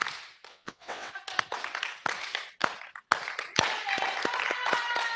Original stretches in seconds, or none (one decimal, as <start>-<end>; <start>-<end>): 0.0-0.5; 1.1-5.2